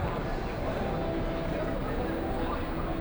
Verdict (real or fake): real